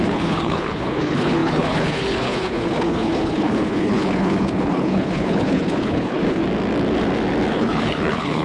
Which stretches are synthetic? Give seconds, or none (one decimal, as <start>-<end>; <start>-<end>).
0.0-6.4; 7.5-8.4